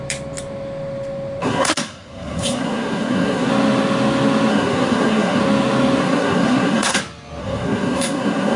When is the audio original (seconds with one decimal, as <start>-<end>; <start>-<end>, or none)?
0.0-1.4; 3.5-4.5; 5.4-6.0; 7.0-7.4